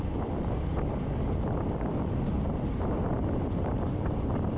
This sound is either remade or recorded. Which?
remade